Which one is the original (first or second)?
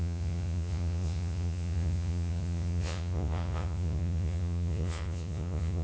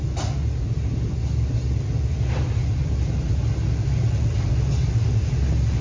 second